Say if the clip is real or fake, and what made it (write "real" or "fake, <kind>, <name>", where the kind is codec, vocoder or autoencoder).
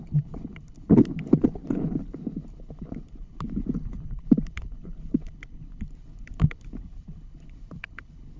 fake, codec, HILCodec